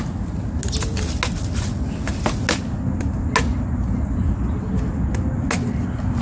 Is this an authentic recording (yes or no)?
yes